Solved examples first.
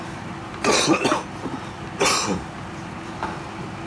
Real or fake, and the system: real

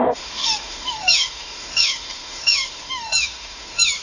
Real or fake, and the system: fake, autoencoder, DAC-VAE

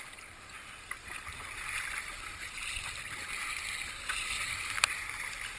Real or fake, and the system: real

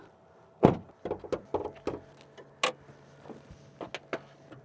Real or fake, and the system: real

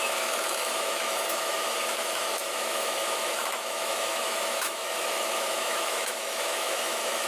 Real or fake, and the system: fake, autoencoder, DAC-VAE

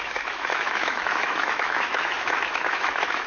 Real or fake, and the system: fake, autoencoder, DAC-VAE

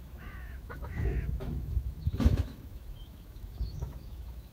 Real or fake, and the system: fake, autoencoder, DAC-VAE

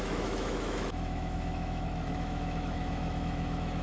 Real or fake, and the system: fake, autoencoder, DAC-VAE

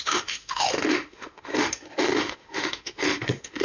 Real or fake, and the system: fake, autoencoder, DAC-VAE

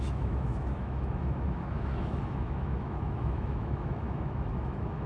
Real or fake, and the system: fake, autoencoder, DAC-VAE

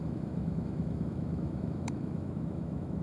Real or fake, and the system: fake, autoencoder, DAC-VAE